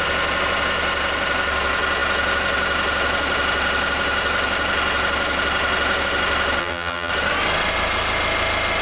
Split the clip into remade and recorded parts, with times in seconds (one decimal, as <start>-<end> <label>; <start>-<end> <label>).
0.0-6.6 recorded; 6.6-7.1 remade; 7.1-8.8 recorded